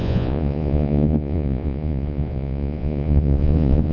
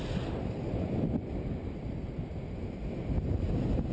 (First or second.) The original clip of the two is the second